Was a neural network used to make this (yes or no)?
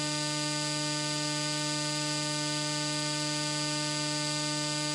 no